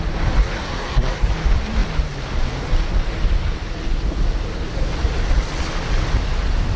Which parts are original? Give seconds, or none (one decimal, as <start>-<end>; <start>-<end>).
0.0-0.4; 1.3-6.8